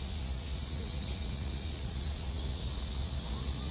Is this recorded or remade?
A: remade